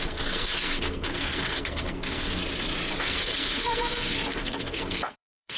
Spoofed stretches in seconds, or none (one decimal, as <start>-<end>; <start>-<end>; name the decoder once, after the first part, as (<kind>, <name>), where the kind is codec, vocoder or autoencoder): 0.0-2.4 (codec, SNAC); 2.9-5.6